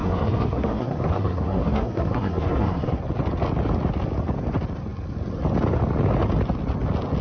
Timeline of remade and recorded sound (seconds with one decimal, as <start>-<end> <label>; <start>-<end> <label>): 0.0-3.0 remade; 3.0-7.2 recorded